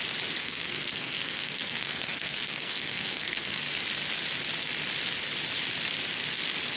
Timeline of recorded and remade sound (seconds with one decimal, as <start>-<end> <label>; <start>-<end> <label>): 0.0-0.4 recorded; 0.4-3.6 remade; 3.6-6.8 recorded